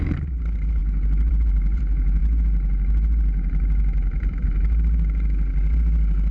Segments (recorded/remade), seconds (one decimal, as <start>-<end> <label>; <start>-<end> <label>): 0.0-0.8 remade; 0.8-1.3 recorded; 1.3-2.2 remade; 2.2-6.3 recorded